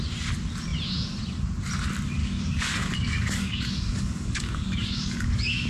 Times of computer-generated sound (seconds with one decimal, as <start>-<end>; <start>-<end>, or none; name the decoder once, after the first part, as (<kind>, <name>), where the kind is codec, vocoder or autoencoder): 2.2-5.7 (codec, DAC)